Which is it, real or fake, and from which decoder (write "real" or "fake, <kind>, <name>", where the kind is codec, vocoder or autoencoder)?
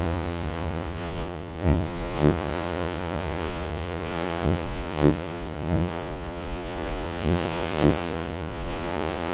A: fake, vocoder, Vocos